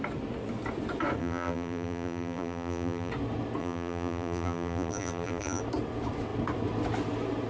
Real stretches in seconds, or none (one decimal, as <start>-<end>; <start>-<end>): 0.0-1.2; 3.1-3.6; 5.6-7.5